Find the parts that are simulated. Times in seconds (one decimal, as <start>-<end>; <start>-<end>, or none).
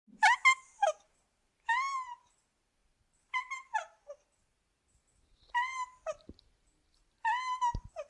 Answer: none